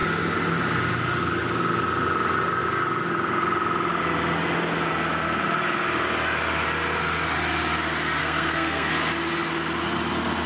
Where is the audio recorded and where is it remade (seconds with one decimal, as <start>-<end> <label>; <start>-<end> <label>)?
0.0-8.2 recorded; 8.2-8.9 remade; 8.9-10.5 recorded